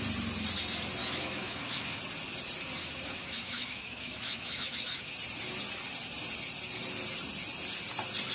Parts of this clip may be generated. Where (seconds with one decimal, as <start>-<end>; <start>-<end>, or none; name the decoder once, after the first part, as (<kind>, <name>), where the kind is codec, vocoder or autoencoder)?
1.0-2.0 (autoencoder, DAC-VAE); 2.8-5.1